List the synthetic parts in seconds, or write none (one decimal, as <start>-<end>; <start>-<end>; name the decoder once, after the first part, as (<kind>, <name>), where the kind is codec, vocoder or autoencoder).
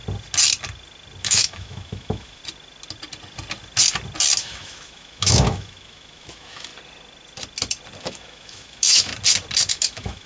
1.2-2.4 (autoencoder, DAC-VAE); 4.4-6.7; 8.0-9.1; 9.7-10.3